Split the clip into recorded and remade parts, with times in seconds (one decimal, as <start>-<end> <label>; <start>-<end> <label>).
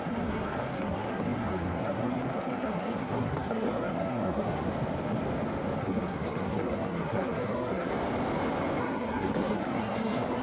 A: 0.0-4.7 remade; 4.7-5.8 recorded; 5.8-7.9 remade; 7.9-8.8 recorded; 8.8-10.4 remade